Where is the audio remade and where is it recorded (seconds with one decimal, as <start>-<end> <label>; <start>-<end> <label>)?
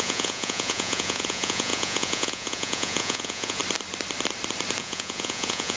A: 0.0-3.6 remade; 3.6-4.8 recorded; 4.8-5.8 remade